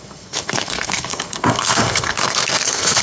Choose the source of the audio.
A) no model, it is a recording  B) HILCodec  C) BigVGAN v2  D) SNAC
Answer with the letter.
D